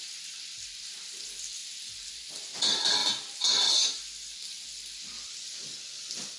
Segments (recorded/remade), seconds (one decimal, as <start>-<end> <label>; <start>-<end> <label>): 0.0-1.6 remade; 1.6-2.3 recorded; 2.3-3.0 remade; 3.0-3.7 recorded; 3.7-6.4 remade